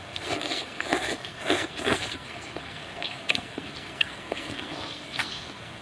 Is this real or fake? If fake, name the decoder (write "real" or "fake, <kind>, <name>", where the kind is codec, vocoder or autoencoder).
fake, codec, SNAC